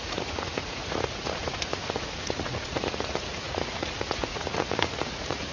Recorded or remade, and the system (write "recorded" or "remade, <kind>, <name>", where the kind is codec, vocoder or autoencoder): remade, vocoder, Vocos